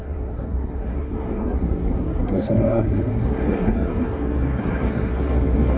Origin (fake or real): fake